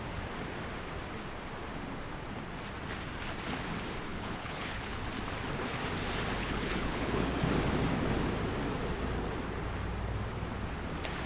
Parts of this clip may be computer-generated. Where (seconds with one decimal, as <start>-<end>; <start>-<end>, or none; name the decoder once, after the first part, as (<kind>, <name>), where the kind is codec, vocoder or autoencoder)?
4.1-5.1 (codec, HILCodec); 6.4-7.3